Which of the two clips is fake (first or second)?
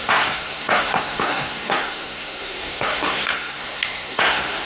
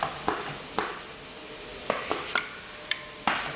first